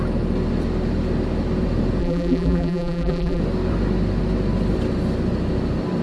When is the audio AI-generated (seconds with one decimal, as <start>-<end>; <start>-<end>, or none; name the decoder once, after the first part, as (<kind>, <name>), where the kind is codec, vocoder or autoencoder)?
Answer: 2.0-3.4 (vocoder, BigVGAN v2)